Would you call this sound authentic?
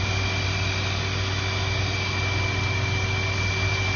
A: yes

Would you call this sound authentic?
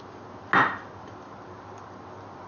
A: yes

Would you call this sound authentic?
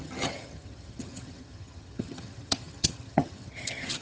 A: no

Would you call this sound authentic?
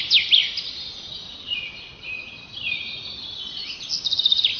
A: yes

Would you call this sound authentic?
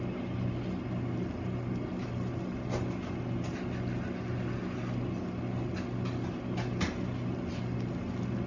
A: yes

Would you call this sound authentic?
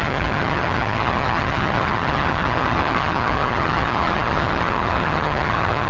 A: no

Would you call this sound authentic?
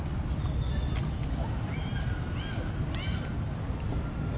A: yes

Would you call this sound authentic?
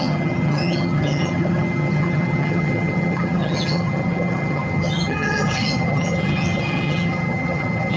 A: no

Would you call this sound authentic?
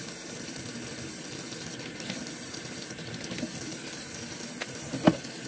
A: yes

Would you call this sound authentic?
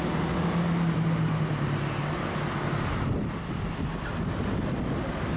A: yes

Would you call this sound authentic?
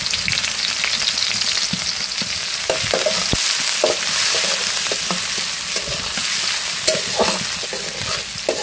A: yes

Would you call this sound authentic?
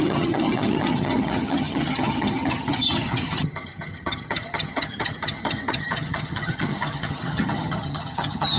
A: no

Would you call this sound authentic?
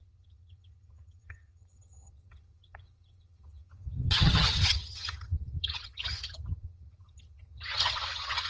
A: no